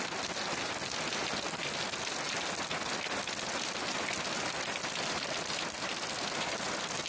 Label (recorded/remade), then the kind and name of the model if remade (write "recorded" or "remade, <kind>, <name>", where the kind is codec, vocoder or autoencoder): recorded